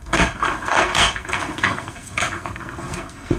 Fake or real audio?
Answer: fake